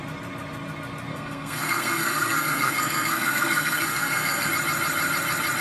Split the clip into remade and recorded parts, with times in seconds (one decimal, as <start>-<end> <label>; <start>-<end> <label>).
0.0-1.1 recorded; 1.1-4.5 remade; 4.5-5.6 recorded